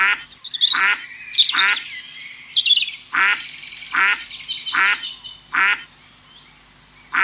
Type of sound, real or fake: real